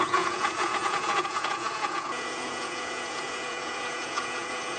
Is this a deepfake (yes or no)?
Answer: yes